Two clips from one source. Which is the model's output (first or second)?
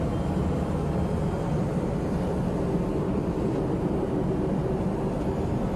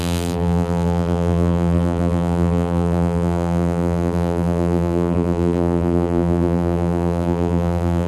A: second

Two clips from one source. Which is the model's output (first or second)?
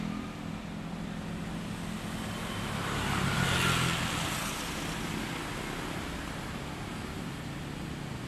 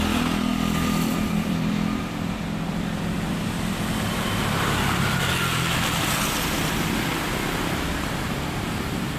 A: second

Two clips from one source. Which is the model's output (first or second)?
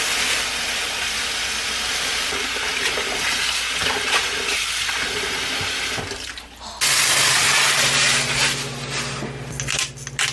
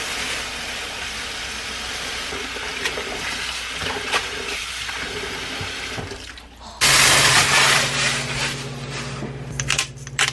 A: second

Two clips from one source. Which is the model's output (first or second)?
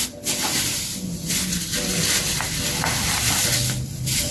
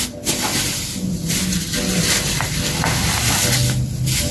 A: first